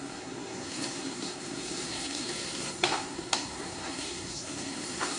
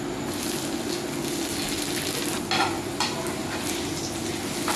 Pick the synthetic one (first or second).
first